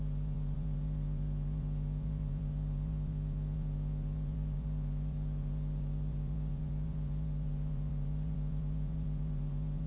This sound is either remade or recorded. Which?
remade